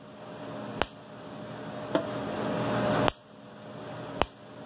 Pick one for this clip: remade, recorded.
recorded